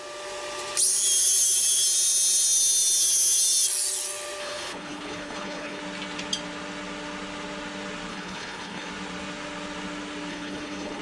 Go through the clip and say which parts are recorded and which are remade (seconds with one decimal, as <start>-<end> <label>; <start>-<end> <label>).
0.0-4.4 recorded; 4.4-5.8 remade; 5.8-8.1 recorded; 8.1-8.9 remade; 8.9-10.3 recorded; 10.3-11.0 remade